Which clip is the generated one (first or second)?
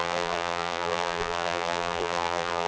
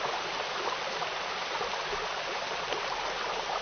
first